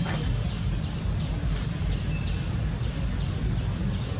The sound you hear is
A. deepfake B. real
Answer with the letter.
B